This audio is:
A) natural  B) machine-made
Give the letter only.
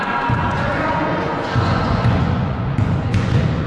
B